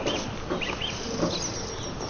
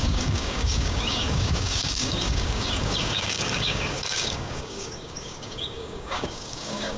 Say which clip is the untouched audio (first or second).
first